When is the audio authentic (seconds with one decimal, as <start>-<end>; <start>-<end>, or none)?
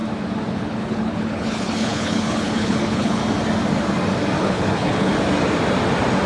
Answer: 0.0-0.5; 3.2-4.4; 5.1-6.3